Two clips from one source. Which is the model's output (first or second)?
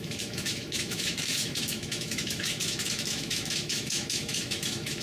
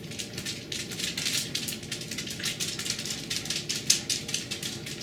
first